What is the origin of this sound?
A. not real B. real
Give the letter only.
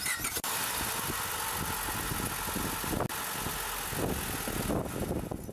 B